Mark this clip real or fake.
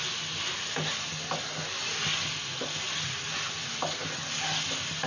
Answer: real